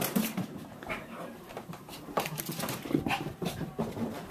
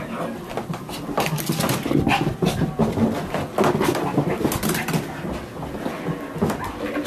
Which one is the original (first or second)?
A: second